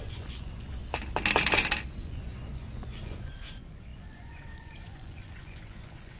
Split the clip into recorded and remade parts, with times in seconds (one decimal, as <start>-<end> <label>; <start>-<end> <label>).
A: 0.0-0.8 remade; 0.8-2.0 recorded; 2.0-6.2 remade